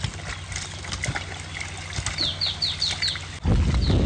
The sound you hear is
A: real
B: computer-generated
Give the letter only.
A